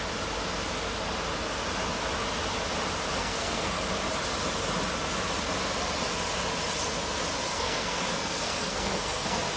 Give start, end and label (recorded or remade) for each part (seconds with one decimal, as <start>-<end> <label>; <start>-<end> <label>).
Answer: 0.0-3.2 recorded; 3.2-3.8 remade; 3.8-7.5 recorded; 7.5-9.6 remade